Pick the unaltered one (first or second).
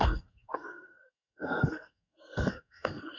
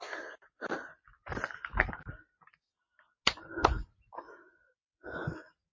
second